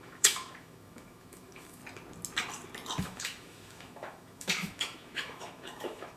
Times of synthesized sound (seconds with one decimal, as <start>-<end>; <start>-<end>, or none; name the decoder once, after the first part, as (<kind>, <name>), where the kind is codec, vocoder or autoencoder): 0.0-1.8 (autoencoder, DAC-VAE); 3.0-6.2